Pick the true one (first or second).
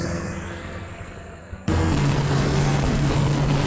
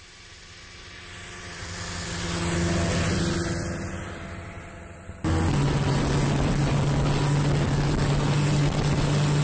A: second